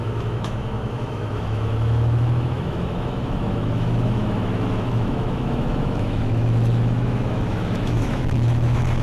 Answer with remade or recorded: remade